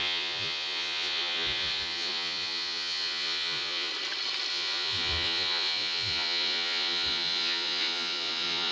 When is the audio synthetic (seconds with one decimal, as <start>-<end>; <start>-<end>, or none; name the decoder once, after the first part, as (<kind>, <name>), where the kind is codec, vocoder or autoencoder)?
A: 0.0-3.9 (vocoder, Vocos); 4.5-8.7

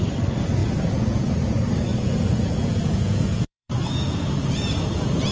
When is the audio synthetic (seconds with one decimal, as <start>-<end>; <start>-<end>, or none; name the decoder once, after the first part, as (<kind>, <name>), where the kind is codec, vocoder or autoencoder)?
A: 0.6-1.3 (vocoder, Vocos); 1.9-5.3

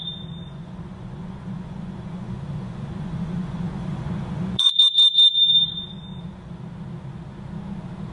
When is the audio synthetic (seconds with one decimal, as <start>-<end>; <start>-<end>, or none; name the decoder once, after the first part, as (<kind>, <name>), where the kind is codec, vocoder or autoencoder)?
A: 0.4-4.8 (vocoder, Vocos); 6.1-6.6

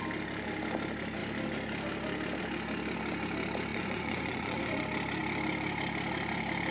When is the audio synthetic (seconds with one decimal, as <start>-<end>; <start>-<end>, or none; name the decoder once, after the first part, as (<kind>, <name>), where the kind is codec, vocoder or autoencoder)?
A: 3.7-4.8 (vocoder, Vocos)

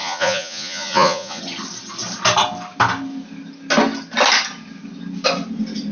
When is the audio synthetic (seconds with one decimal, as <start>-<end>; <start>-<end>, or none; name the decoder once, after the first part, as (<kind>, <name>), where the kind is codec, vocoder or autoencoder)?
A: 0.0-1.4 (vocoder, Vocos)

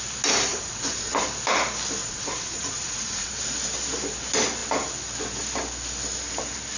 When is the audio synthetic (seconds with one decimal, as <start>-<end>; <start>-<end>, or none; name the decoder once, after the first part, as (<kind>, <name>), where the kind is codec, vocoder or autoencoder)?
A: 0.5-1.2 (vocoder, Vocos); 2.0-3.3